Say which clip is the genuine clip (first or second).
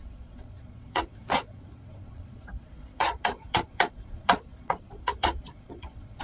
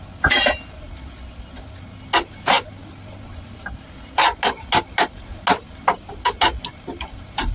second